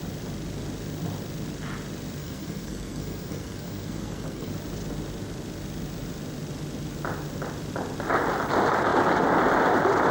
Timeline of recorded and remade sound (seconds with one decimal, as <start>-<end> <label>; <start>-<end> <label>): 0.0-2.2 recorded; 2.2-4.5 remade; 4.5-10.1 recorded